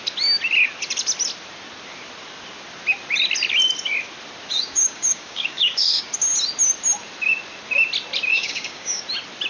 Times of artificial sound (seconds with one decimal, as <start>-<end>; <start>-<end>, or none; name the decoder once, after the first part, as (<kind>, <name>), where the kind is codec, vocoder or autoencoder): 4.5-6.0 (codec, DAC); 8.3-9.0